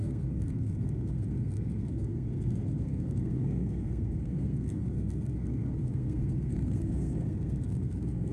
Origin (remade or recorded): remade